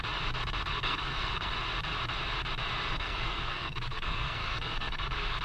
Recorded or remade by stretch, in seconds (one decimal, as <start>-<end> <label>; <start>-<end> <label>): 0.0-0.7 recorded; 0.7-1.5 remade; 1.5-2.9 recorded; 2.9-5.4 remade